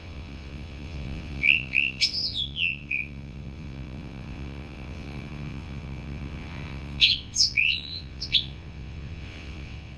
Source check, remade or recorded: remade